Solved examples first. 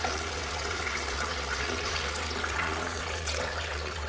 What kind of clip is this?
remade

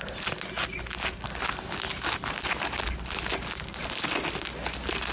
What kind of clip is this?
recorded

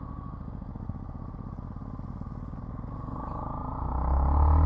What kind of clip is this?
recorded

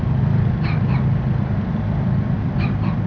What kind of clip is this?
recorded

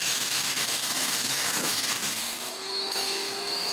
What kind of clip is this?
remade